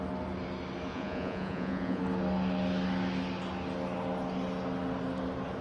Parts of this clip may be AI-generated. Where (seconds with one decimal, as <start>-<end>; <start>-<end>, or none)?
0.9-2.0